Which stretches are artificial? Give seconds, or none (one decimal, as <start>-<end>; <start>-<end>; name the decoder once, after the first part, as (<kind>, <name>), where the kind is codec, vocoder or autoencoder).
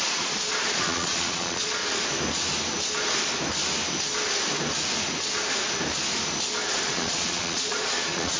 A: 0.0-1.8 (vocoder, Vocos); 6.7-8.4